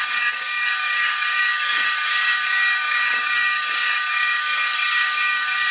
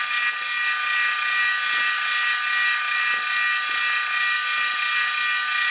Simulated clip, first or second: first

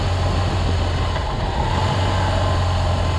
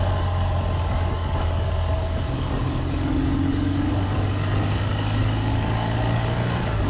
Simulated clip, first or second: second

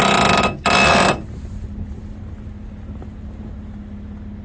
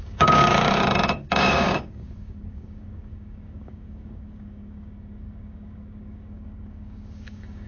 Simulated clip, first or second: second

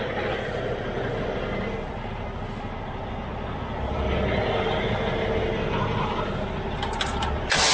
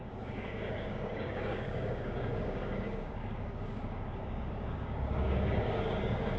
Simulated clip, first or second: second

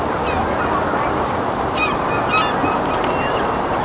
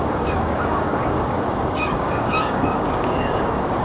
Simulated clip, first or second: second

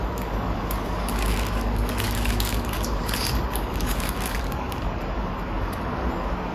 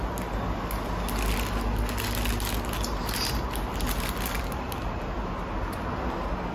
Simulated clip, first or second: first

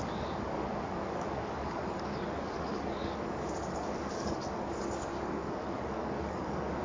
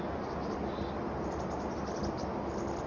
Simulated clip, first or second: first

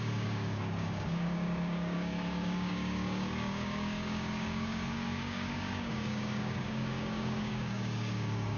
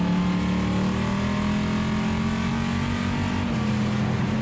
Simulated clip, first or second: first